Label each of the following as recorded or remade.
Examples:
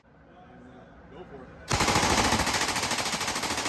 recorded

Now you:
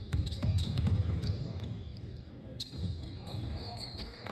remade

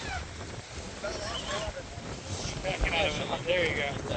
recorded